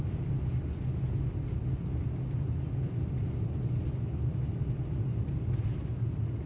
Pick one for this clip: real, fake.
real